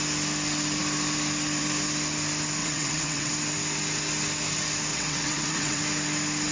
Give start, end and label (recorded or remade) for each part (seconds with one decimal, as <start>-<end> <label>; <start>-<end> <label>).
0.0-2.6 recorded; 2.6-3.3 remade; 3.3-4.9 recorded; 4.9-5.8 remade; 5.8-6.5 recorded